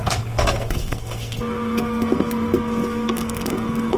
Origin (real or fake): fake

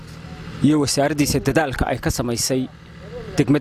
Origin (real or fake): real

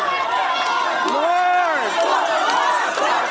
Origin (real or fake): real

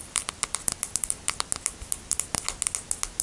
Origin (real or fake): real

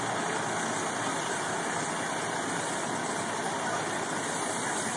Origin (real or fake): real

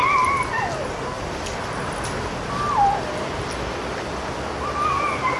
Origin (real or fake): real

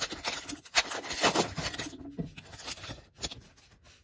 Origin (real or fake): real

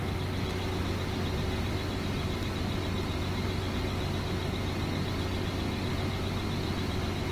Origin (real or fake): real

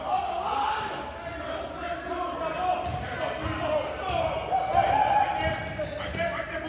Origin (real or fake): real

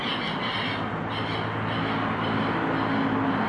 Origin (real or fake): real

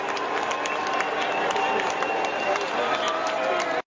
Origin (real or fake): real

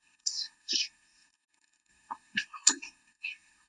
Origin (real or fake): fake